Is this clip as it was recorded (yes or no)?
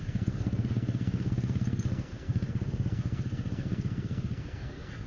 no